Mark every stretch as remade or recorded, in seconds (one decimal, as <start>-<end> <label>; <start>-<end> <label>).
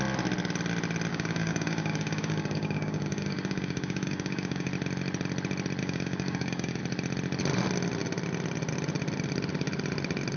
0.0-1.1 recorded; 1.1-4.7 remade; 4.7-5.8 recorded; 5.8-6.8 remade; 6.8-10.4 recorded